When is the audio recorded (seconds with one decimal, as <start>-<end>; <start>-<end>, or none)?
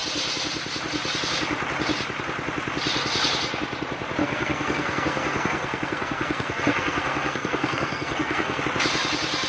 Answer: 0.0-4.2; 8.6-9.5